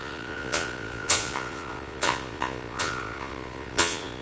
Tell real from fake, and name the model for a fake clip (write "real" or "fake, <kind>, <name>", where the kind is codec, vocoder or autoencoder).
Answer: fake, vocoder, Vocos